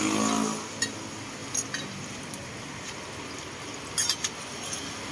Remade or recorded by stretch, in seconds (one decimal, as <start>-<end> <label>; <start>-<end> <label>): 0.0-5.1 recorded